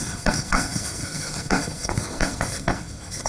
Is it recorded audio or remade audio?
remade